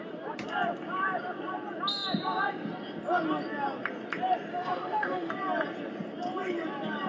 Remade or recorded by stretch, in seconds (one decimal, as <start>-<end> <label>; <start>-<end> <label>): 0.0-4.5 recorded; 4.5-5.3 remade; 5.3-7.1 recorded